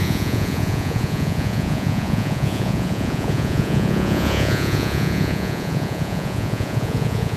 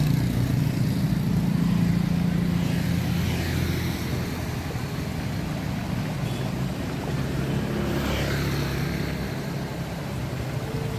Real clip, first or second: second